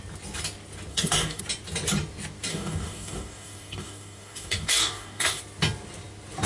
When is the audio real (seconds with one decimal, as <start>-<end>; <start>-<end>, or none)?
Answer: 0.0-0.9; 1.4-2.5; 5.4-6.5